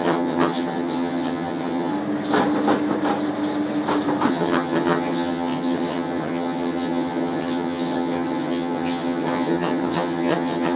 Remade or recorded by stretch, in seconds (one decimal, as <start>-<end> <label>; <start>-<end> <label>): 0.0-1.9 remade; 1.9-4.3 recorded; 4.3-10.8 remade